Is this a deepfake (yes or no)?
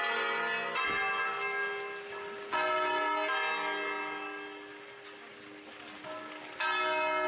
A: no